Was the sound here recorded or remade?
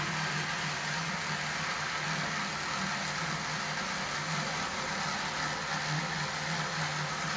recorded